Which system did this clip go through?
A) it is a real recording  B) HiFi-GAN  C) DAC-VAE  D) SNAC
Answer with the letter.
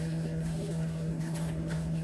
D